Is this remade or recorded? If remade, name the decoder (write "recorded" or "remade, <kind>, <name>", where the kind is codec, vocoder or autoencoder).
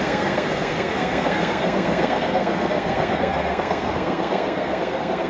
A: remade, codec, SNAC